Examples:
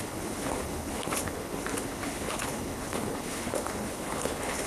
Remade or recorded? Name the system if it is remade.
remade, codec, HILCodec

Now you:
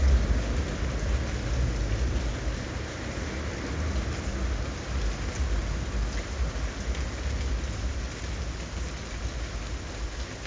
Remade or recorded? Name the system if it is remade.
recorded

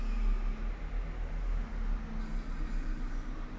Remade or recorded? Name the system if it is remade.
recorded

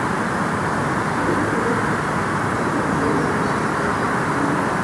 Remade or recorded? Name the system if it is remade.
recorded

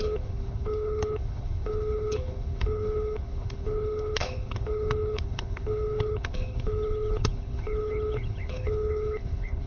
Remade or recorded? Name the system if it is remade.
remade, codec, HILCodec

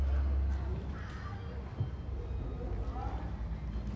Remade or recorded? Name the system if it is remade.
recorded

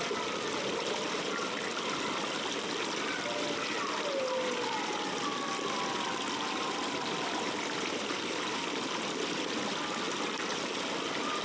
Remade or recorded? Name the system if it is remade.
recorded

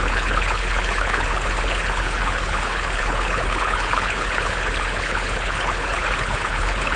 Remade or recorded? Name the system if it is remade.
remade, codec, HILCodec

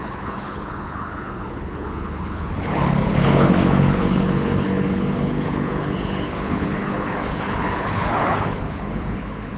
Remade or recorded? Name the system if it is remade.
remade, codec, HILCodec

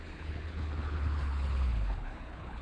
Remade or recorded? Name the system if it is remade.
remade, codec, HILCodec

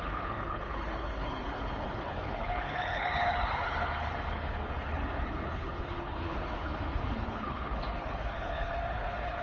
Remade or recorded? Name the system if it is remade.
remade, codec, HILCodec